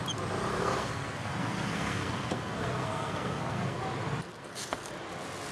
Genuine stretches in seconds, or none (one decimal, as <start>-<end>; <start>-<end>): 0.0-0.5; 3.8-4.3; 4.9-5.5